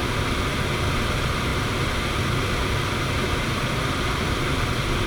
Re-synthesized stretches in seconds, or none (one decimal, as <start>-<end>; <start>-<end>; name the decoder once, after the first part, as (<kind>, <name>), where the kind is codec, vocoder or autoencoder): 0.9-1.5 (vocoder, BigVGAN v2); 3.6-5.1